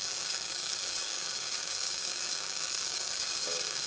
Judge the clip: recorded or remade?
remade